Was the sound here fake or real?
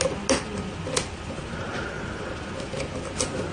real